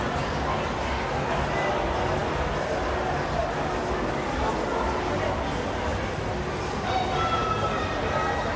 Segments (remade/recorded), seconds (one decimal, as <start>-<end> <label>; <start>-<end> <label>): 0.0-8.6 recorded